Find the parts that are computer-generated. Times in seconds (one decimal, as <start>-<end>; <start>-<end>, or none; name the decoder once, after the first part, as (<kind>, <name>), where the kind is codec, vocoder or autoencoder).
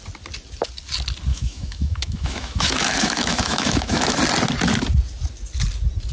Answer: 1.3-4.2 (autoencoder, DAC-VAE)